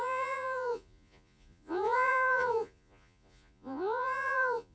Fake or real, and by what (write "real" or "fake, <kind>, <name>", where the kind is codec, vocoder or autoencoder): fake, vocoder, Vocos